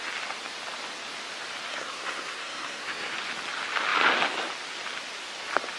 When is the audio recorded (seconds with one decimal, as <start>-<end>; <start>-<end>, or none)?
0.0-1.7; 3.1-5.8